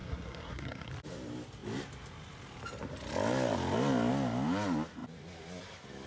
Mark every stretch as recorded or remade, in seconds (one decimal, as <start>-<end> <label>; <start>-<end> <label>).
0.0-0.9 remade; 0.9-6.1 recorded